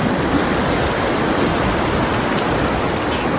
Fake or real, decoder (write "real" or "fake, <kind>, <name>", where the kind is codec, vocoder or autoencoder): real